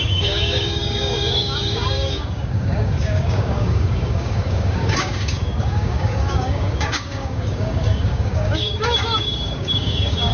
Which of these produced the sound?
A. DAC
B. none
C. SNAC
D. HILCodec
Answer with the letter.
A